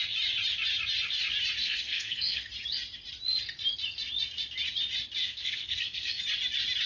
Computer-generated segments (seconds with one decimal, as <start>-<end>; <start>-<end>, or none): 1.6-2.5; 5.2-6.2

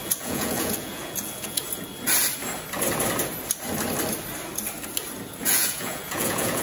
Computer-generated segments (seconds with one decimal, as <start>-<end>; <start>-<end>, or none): 0.0-1.6; 5.4-6.6

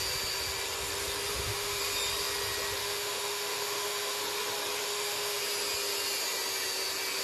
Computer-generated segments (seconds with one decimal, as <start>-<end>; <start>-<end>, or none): 1.3-1.8; 2.8-4.2; 4.8-5.4

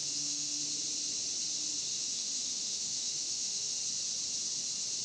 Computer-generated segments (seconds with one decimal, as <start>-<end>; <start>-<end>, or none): 0.0-0.6; 1.9-3.8